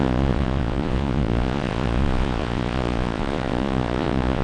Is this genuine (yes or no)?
no